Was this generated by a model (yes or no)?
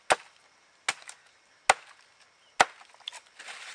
no